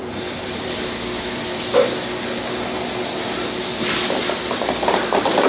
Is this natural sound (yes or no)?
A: no